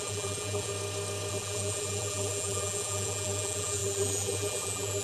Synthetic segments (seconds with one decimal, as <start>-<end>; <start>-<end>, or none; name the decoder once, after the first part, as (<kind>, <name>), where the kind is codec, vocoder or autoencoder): 0.0-0.7 (vocoder, BigVGAN v2); 1.3-5.0